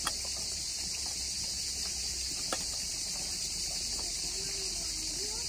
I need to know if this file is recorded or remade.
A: recorded